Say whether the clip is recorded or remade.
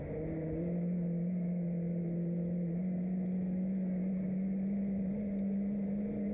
recorded